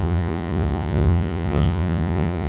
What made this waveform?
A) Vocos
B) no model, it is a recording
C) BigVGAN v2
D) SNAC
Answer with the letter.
A